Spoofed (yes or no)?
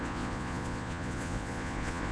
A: yes